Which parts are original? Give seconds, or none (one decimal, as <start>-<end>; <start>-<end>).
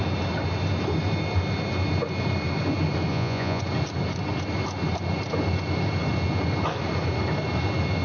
0.0-3.1; 3.6-8.0